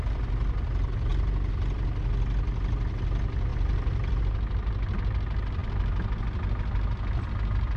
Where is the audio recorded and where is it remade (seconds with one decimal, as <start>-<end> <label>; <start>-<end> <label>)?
0.0-3.5 recorded; 3.5-4.2 remade; 4.2-7.8 recorded